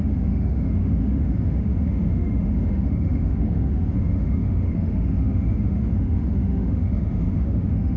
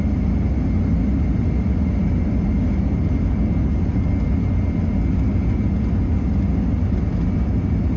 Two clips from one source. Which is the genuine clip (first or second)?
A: second